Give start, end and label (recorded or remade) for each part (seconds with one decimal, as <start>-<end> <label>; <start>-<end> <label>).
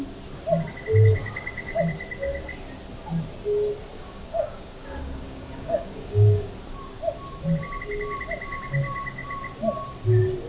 0.0-1.2 recorded; 1.2-1.8 remade; 1.8-3.9 recorded; 3.9-6.5 remade; 6.5-10.5 recorded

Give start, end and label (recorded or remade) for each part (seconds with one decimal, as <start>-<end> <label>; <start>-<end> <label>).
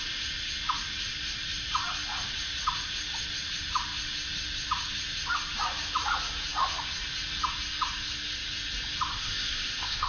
0.0-9.1 recorded; 9.1-10.1 remade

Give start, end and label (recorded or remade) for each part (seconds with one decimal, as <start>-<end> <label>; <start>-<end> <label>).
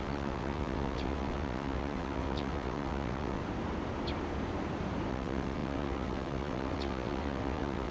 0.0-3.4 remade; 3.4-5.1 recorded; 5.1-7.9 remade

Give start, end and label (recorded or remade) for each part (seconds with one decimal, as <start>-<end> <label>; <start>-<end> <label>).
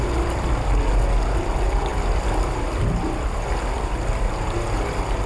0.0-5.3 recorded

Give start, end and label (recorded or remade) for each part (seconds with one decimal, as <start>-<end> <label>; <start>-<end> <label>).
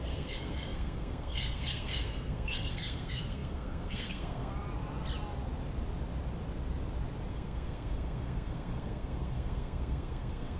0.0-4.5 remade; 4.5-7.3 recorded; 7.3-10.6 remade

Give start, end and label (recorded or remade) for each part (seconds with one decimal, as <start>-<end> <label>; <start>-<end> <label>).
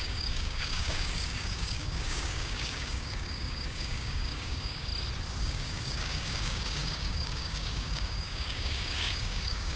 0.0-4.9 remade; 4.9-5.4 recorded; 5.4-9.8 remade